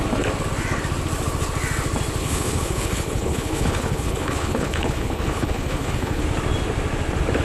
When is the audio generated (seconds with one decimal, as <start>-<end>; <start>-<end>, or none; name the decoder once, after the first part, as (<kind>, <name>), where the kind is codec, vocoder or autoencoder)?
2.2-6.2 (codec, HILCodec)